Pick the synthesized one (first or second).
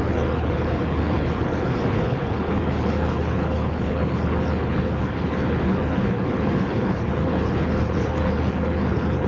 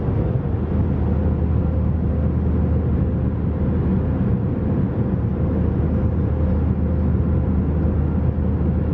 first